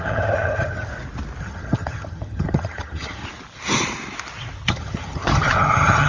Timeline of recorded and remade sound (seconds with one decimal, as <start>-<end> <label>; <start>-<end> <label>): 0.0-0.9 remade; 0.9-1.4 recorded; 1.4-3.2 remade; 3.2-4.7 recorded; 4.7-6.1 remade